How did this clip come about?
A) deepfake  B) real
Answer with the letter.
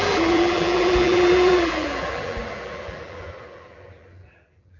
A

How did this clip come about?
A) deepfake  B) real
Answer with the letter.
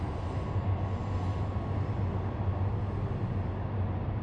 B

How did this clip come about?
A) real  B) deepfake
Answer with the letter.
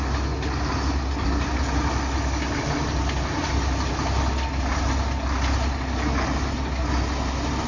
A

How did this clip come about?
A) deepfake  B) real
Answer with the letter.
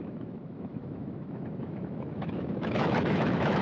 A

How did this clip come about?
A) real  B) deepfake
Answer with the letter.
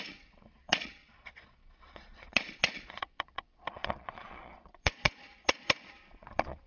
B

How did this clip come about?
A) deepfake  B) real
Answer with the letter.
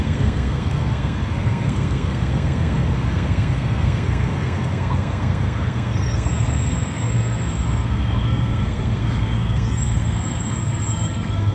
A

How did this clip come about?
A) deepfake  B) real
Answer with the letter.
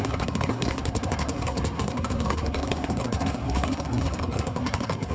A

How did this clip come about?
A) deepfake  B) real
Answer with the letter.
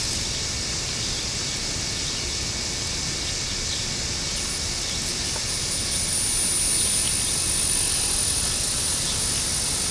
B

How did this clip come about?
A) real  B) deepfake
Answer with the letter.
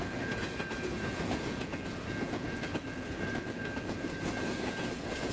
B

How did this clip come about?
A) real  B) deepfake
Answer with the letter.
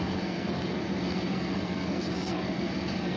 B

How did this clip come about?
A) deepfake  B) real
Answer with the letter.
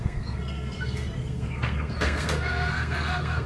A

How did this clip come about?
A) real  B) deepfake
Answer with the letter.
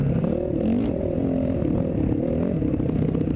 A